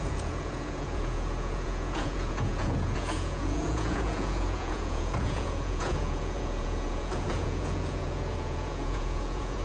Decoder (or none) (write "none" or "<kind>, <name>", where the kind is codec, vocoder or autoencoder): vocoder, Vocos